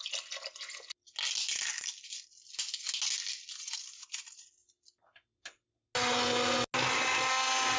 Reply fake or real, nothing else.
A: real